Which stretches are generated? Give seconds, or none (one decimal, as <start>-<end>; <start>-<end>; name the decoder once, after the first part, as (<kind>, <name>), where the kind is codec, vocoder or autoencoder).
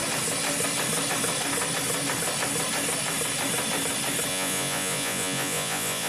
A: 4.3-6.1 (vocoder, Vocos)